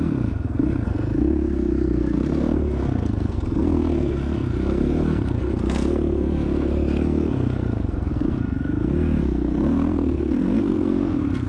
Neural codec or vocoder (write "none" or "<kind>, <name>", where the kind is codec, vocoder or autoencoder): codec, SNAC